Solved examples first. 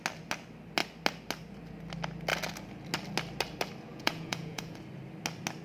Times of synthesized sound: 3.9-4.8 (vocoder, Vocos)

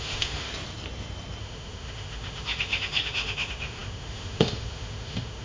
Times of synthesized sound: 0.0-0.5 (autoencoder, DAC-VAE); 1.4-5.4

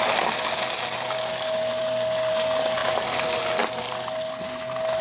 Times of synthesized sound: none

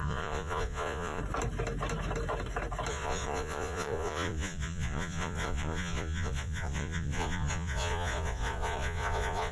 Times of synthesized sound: 0.0-1.2 (vocoder, Vocos); 2.9-9.5

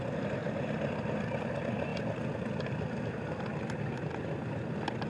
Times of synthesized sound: none

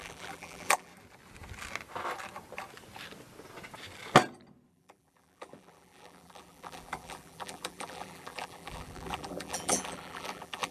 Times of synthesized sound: 0.0-0.9 (vocoder, BigVGAN v2); 4.7-10.7

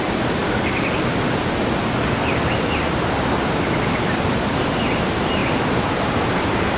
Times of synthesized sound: none